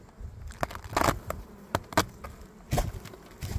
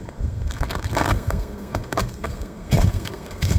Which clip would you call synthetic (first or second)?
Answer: second